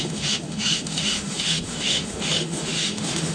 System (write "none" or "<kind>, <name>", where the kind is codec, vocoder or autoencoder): autoencoder, DAC-VAE